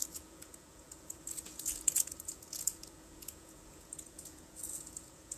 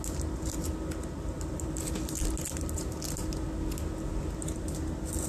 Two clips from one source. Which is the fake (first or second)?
first